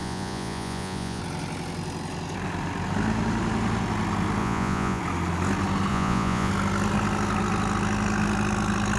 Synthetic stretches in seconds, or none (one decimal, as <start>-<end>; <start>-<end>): 0.0-1.2; 4.4-5.0; 5.9-6.5